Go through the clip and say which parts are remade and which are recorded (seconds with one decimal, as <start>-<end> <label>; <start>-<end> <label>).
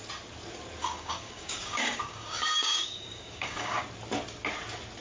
0.0-0.8 recorded; 0.8-3.8 remade; 3.8-5.0 recorded